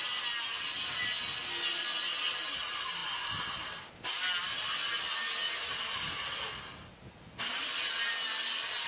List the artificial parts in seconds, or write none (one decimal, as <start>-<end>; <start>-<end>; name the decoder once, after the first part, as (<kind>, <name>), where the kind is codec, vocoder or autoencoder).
none

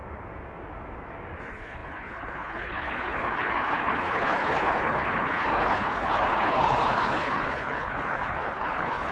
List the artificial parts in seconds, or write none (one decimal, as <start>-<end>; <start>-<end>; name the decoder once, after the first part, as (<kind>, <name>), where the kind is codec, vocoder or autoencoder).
1.4-9.1 (codec, HILCodec)

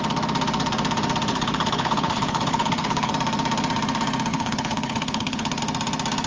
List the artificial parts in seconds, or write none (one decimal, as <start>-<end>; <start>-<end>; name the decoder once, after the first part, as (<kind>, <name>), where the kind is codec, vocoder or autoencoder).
1.3-3.1 (codec, HILCodec); 4.3-5.6

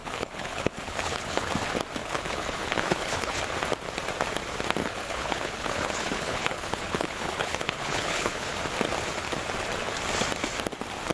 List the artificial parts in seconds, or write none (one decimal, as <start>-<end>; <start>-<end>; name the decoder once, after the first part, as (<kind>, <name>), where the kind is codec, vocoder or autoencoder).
0.0-1.5 (codec, HILCodec); 2.0-3.4; 4.8-8.5

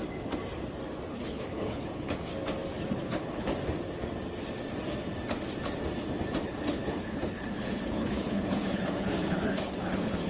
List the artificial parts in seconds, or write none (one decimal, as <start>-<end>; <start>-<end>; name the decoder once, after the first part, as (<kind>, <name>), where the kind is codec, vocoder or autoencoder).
1.1-2.3 (codec, HILCodec); 2.9-3.5; 6.4-10.3